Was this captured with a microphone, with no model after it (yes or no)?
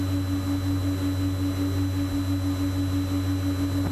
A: yes